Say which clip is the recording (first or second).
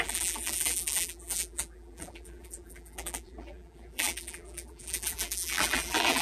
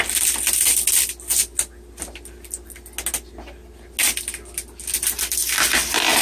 second